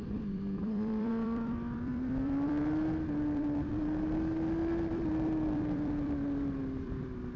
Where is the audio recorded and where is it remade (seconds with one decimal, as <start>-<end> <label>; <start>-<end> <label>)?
0.0-7.4 remade